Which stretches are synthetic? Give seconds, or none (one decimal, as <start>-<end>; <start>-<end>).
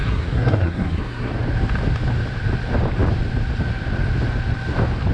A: 0.0-1.3